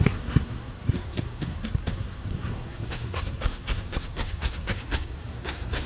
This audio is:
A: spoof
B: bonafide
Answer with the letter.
A